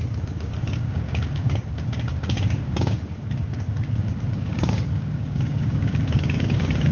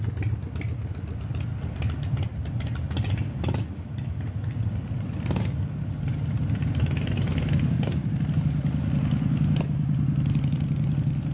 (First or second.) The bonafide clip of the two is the second